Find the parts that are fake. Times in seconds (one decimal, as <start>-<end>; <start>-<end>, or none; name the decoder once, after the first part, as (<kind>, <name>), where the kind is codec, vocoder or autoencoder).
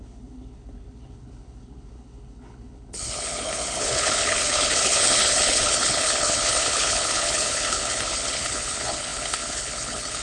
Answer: 0.0-10.2 (codec, HILCodec)